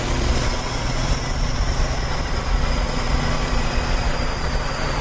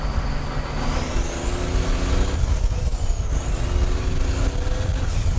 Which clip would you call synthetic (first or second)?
first